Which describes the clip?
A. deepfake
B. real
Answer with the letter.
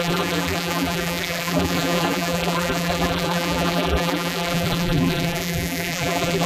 A